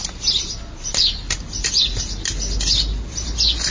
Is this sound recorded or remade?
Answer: recorded